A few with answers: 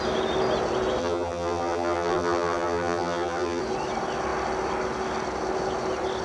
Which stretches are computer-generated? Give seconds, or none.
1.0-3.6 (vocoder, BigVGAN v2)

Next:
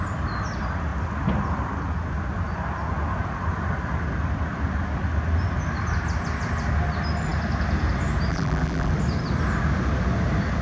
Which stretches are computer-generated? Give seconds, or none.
8.3-8.9 (vocoder, BigVGAN v2)

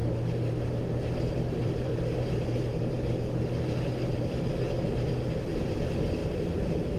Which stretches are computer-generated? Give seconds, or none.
1.1-1.9 (vocoder, BigVGAN v2); 3.9-6.2

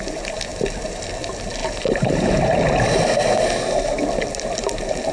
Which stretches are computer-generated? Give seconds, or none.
1.6-2.6 (vocoder, BigVGAN v2)